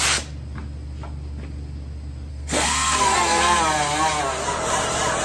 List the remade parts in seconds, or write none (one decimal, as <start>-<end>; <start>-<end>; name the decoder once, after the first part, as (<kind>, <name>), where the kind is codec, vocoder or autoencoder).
2.3-3.6 (codec, SNAC)